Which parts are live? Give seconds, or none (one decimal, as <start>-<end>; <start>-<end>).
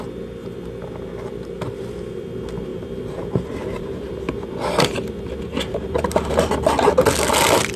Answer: 0.0-2.7; 4.1-5.5; 6.5-7.8